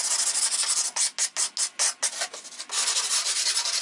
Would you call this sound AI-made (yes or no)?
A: no